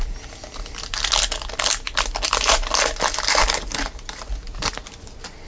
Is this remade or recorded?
recorded